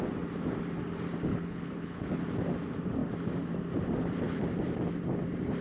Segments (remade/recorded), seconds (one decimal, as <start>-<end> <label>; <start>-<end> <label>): 0.0-1.3 recorded; 1.3-2.2 remade; 2.2-5.6 recorded